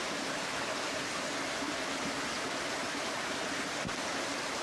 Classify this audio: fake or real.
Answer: real